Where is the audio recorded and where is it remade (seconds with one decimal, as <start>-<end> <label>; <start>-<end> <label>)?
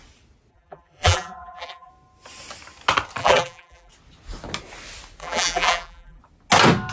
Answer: 0.0-0.5 recorded; 0.5-1.9 remade; 1.9-3.2 recorded; 3.2-3.9 remade; 3.9-5.2 recorded; 5.2-6.2 remade; 6.2-6.9 recorded